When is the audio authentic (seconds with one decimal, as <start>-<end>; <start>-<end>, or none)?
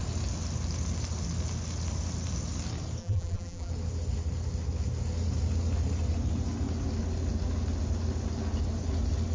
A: 0.0-3.0; 3.7-9.3